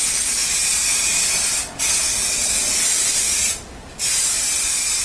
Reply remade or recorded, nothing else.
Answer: recorded